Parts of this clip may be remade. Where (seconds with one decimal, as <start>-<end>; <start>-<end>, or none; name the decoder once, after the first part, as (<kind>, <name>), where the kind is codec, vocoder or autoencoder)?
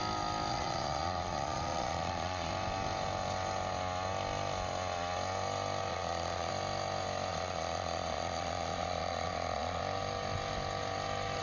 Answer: 0.5-2.5 (vocoder, Vocos); 5.9-6.5; 7.3-9.8